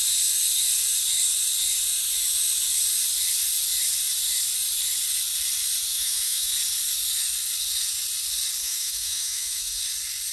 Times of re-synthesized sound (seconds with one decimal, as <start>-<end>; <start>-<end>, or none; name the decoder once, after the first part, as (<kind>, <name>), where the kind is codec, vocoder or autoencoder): 5.9-6.5 (autoencoder, DAC-VAE); 8.6-9.8